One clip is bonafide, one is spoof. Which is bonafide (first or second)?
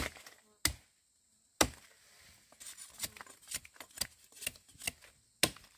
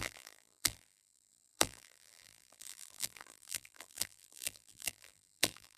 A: first